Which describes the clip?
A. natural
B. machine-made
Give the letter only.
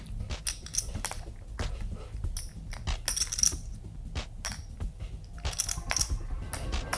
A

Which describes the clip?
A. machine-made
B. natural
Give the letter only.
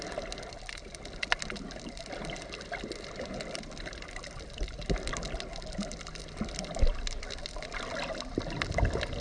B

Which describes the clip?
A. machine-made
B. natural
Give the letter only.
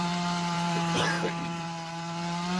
A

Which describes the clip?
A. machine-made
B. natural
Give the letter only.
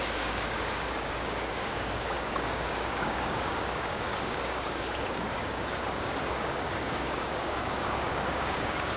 A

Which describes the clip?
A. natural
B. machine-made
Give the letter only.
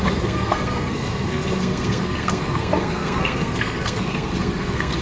B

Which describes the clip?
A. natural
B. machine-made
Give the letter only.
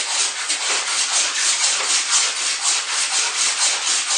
A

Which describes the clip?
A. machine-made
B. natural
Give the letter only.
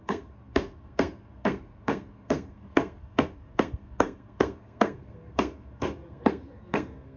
A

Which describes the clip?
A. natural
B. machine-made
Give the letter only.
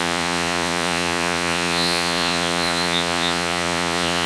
B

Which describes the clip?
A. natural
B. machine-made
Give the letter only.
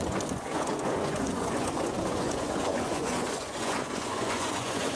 B